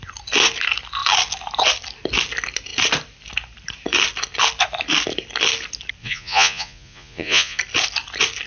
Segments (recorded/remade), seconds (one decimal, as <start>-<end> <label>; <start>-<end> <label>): 0.0-6.0 recorded; 6.0-7.6 remade; 7.6-8.5 recorded